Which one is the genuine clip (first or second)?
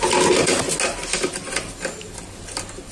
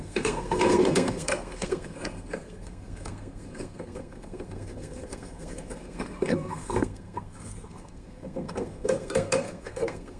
first